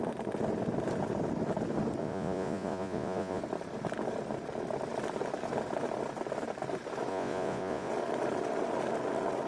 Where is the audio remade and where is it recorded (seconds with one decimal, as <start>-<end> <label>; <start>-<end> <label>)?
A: 0.0-2.0 recorded; 2.0-3.4 remade; 3.4-7.1 recorded; 7.1-7.9 remade; 7.9-9.5 recorded